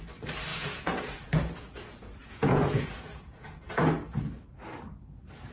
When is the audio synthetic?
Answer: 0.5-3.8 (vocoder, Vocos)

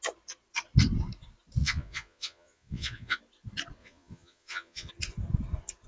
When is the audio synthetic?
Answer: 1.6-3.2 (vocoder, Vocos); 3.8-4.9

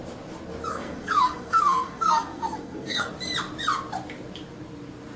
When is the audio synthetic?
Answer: 0.7-3.1 (codec, SNAC)

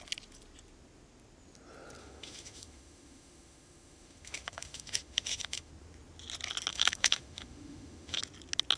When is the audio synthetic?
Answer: 2.0-5.7 (autoencoder, DAC-VAE); 6.7-8.2

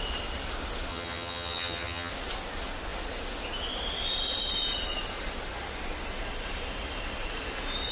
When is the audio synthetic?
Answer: 0.9-2.1 (vocoder, HiFi-GAN)

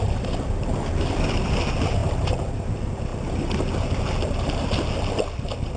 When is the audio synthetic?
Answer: none